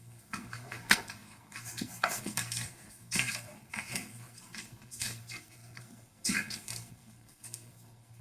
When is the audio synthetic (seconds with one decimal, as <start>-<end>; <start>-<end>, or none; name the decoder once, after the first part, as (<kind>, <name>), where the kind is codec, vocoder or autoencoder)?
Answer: 0.0-8.2 (codec, SNAC)